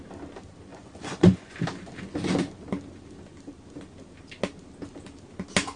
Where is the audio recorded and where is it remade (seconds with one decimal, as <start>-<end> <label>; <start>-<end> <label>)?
0.0-0.7 recorded; 0.7-1.5 remade; 1.5-5.8 recorded